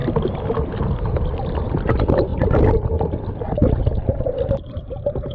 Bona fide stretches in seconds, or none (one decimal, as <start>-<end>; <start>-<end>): 0.0-2.3; 2.9-4.1